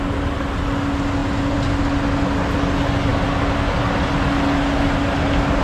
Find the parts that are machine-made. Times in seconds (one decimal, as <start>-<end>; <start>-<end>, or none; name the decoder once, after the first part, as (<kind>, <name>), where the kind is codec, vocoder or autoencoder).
none